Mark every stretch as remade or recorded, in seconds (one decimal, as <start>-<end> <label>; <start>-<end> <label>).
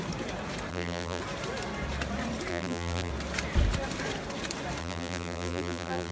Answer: 0.0-0.7 recorded; 0.7-1.2 remade; 1.2-2.5 recorded; 2.5-3.1 remade; 3.1-4.8 recorded; 4.8-6.1 remade